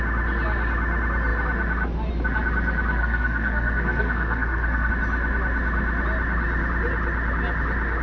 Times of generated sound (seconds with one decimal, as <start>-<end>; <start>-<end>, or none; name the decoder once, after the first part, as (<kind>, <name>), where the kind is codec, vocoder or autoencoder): 3.0-4.9 (codec, SNAC)